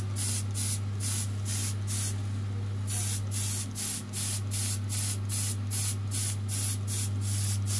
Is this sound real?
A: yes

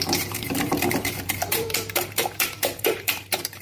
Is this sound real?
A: no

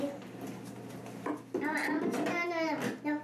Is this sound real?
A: yes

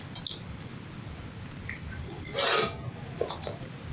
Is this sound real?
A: yes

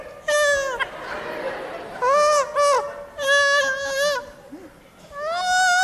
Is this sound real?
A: yes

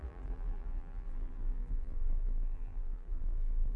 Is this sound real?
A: no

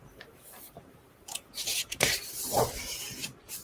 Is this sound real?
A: no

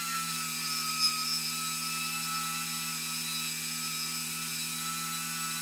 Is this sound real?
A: yes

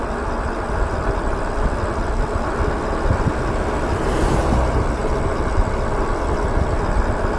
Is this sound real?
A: yes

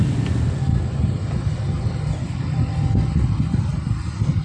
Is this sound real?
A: yes